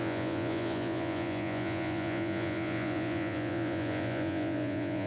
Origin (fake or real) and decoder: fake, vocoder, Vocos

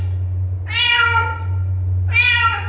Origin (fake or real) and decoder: real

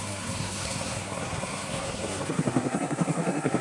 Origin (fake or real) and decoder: fake, codec, SNAC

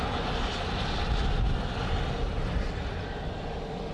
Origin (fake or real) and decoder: real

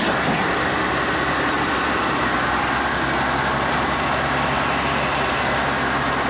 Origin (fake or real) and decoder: real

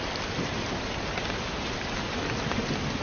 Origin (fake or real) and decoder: real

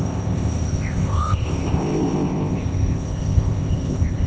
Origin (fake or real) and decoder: fake, codec, ZipCodec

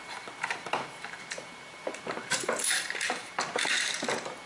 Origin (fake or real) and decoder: fake, vocoder, BigVGAN v2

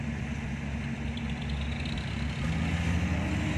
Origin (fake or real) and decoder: real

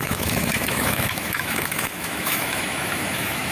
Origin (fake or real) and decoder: fake, autoencoder, DAC-VAE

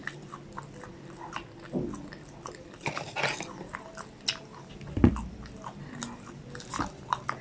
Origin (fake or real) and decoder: real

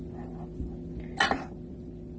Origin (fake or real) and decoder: real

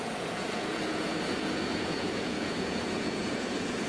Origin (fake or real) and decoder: fake, vocoder, Vocos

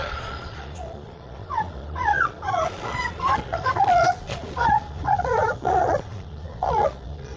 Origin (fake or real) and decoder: fake, vocoder, Vocos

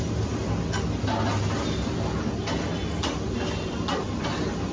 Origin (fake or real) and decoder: real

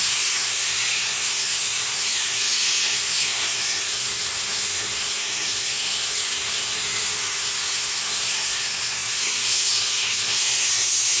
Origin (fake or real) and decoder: fake, codec, SNAC